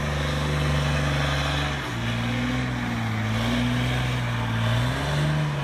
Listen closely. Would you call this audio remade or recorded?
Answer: recorded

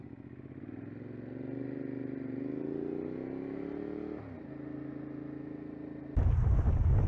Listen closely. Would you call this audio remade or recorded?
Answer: recorded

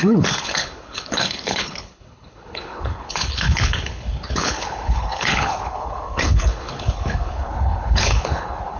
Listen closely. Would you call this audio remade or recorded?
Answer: remade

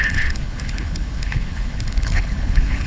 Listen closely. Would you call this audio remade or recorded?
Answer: remade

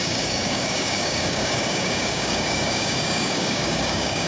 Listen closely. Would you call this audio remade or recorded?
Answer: remade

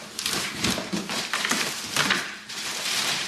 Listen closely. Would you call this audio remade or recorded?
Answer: remade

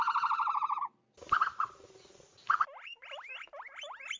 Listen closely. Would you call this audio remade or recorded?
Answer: recorded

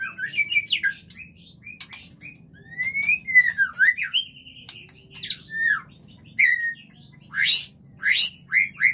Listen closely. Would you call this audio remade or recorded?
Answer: recorded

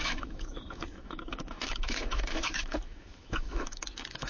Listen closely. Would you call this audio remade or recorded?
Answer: remade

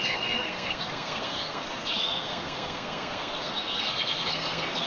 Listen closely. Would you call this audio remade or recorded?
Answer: remade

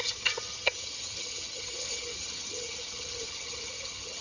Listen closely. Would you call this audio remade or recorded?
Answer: remade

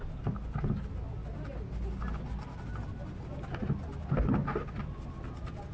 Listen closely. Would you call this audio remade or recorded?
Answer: recorded